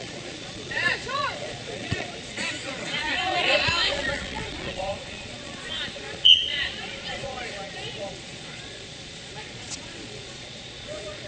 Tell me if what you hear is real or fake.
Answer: fake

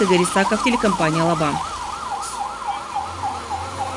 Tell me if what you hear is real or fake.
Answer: real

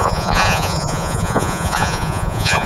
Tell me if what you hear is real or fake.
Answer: fake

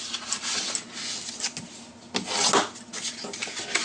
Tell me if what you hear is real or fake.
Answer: real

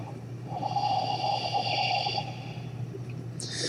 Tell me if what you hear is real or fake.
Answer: fake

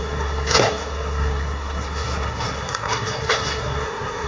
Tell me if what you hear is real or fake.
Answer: fake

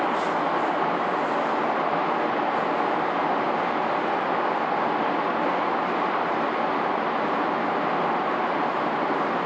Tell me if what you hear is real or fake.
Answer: real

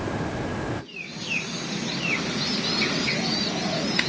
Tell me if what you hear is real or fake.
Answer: real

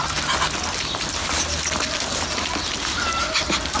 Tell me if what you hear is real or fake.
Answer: real